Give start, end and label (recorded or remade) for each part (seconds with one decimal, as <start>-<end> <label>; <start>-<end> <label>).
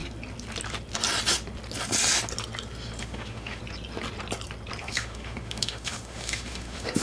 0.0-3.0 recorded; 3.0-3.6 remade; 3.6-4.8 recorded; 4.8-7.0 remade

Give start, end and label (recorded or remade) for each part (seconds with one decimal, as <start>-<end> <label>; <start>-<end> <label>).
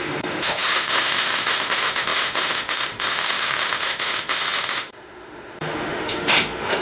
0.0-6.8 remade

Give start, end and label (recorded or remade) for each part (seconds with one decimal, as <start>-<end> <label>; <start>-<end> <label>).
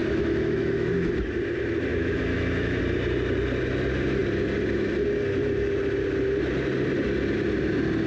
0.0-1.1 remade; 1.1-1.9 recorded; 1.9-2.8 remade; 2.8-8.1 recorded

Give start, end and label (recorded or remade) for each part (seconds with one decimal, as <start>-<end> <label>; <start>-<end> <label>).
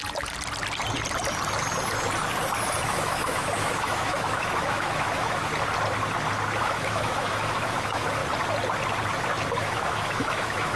0.0-2.9 recorded; 2.9-5.5 remade; 5.5-6.6 recorded; 6.6-8.2 remade; 8.2-9.6 recorded; 9.6-10.8 remade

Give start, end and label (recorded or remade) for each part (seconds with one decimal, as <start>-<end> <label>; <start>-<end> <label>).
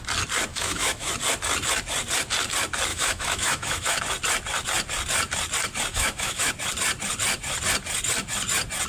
0.0-0.5 recorded; 0.5-1.1 remade; 1.1-2.9 recorded; 2.9-4.0 remade; 4.0-5.9 recorded; 5.9-6.5 remade; 6.5-8.9 recorded